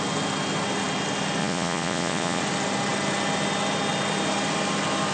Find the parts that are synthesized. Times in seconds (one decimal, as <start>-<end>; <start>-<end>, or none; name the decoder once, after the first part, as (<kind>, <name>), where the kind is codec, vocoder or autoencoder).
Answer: 1.4-2.4 (vocoder, Vocos)